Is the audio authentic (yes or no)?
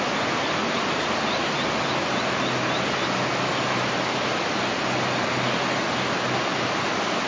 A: yes